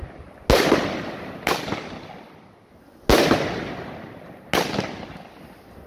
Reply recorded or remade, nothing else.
recorded